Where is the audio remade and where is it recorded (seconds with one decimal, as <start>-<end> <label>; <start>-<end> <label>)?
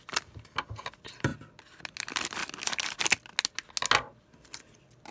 0.0-1.3 remade; 1.3-2.0 recorded; 2.0-2.4 remade; 2.4-4.2 recorded; 4.2-5.1 remade